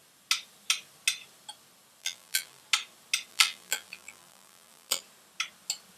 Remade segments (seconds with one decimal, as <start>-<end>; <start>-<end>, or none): 2.0-2.6; 3.3-5.0